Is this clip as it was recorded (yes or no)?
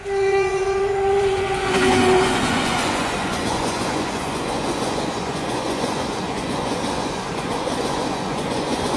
no